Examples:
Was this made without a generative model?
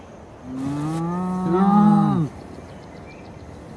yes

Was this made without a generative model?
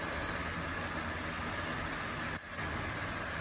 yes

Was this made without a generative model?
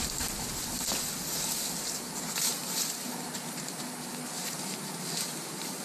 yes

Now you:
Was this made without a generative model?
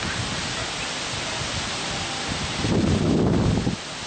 yes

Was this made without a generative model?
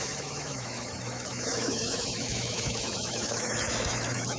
no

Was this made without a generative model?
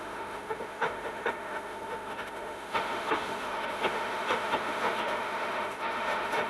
no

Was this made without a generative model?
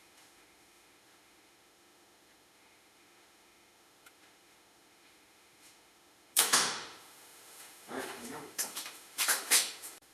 no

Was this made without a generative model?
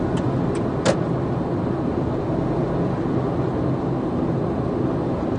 yes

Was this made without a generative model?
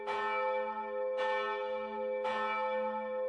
yes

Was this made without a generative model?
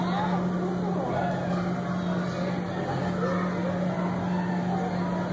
yes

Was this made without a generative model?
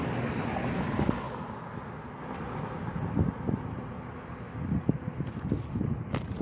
yes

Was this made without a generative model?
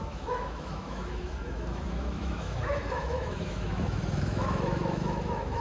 no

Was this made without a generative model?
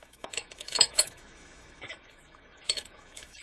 no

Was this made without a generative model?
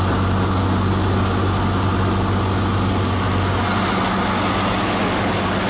yes